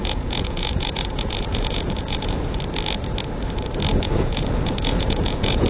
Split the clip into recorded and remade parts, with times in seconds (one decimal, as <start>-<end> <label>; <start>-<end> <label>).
0.0-2.6 remade; 2.6-3.9 recorded; 3.9-5.7 remade